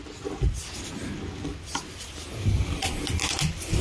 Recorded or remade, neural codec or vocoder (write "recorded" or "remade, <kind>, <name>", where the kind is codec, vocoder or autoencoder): recorded